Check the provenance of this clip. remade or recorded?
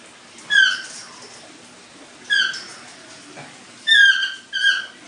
recorded